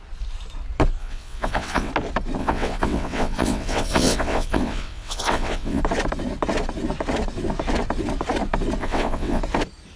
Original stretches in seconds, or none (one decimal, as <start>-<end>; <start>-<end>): 0.0-1.0; 1.9-2.4; 5.8-8.8; 9.4-10.0